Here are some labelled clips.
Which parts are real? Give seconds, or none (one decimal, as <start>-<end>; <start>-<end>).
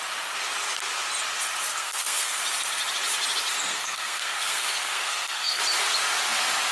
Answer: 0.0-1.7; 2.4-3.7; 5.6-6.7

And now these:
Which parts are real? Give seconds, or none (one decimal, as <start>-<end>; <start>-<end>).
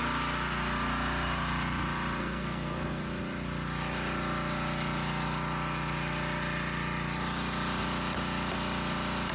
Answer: 0.0-2.2; 3.0-9.3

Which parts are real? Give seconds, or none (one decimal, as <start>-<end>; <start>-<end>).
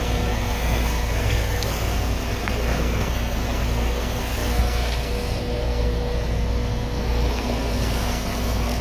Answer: none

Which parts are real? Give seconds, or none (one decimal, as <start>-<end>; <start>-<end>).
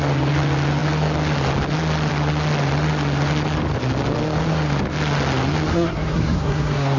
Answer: 0.0-5.7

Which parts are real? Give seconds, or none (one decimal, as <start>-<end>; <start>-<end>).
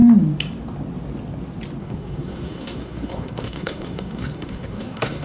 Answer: 0.0-1.8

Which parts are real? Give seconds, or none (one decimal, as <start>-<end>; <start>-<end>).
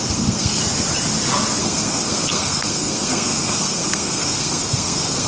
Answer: 0.6-1.6